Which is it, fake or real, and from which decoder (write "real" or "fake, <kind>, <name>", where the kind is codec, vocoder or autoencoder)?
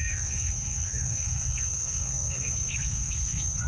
fake, codec, SNAC